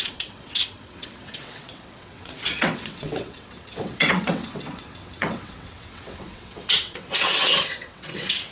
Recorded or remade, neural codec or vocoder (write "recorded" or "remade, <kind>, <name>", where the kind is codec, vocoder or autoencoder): remade, vocoder, WaveNeXt